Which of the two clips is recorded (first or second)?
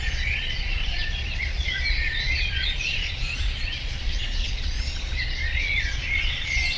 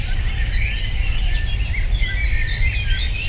second